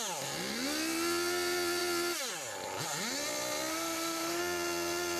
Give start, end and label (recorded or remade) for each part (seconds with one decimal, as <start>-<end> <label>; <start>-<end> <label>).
0.0-3.7 recorded; 3.7-4.4 remade; 4.4-5.2 recorded